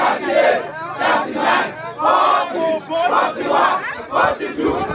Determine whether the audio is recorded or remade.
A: recorded